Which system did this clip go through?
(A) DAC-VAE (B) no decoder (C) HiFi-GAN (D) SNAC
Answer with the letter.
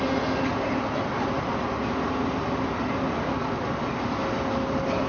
B